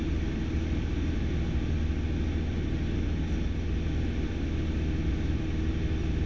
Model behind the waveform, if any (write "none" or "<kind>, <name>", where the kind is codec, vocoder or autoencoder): none